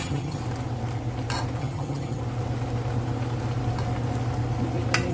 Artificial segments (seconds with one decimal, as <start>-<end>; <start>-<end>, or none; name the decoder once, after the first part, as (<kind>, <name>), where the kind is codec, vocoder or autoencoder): 0.0-0.4 (vocoder, HiFi-GAN); 1.6-2.2